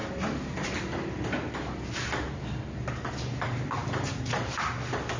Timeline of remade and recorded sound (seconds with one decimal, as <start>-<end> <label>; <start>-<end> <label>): 0.0-5.2 recorded